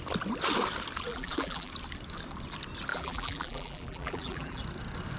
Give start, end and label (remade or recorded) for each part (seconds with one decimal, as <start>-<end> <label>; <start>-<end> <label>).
0.0-1.1 recorded; 1.1-1.7 remade; 1.7-2.9 recorded; 2.9-4.6 remade; 4.6-5.2 recorded